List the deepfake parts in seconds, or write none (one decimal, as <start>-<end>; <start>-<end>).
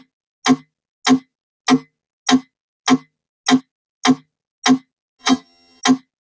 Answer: 5.2-5.8